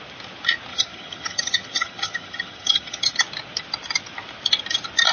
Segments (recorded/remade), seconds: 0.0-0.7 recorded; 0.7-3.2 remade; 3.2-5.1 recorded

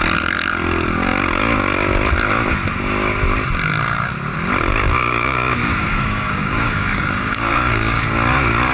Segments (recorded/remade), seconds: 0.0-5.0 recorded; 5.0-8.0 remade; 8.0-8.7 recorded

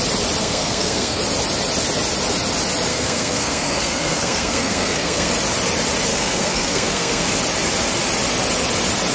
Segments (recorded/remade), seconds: 0.0-0.4 recorded; 0.4-1.2 remade; 1.2-2.9 recorded; 2.9-5.3 remade; 5.3-6.1 recorded; 6.1-7.3 remade; 7.3-9.1 recorded

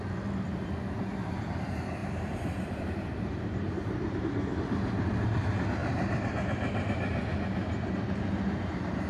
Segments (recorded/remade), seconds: 0.0-2.0 recorded; 2.0-4.2 remade; 4.2-5.8 recorded; 5.8-9.1 remade